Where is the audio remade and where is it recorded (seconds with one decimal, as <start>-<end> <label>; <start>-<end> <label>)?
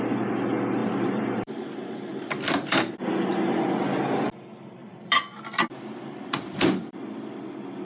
0.0-0.8 recorded; 0.8-1.5 remade; 1.5-4.8 recorded; 4.8-7.3 remade; 7.3-7.8 recorded